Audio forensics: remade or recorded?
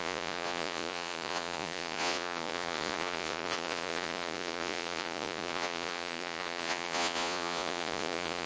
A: remade